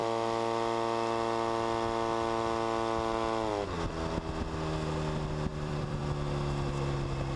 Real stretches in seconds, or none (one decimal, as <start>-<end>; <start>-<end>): 0.0-5.5; 6.0-7.4